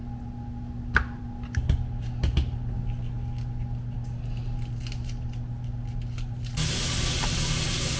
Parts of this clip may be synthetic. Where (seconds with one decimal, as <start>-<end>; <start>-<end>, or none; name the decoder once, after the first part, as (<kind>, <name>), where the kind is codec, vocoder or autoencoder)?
none